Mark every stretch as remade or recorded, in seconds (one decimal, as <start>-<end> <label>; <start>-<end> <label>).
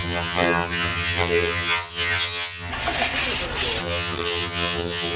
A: 0.0-2.7 remade; 2.7-3.8 recorded; 3.8-5.2 remade